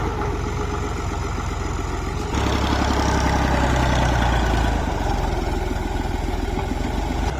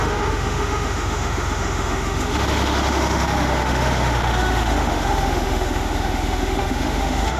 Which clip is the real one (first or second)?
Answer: first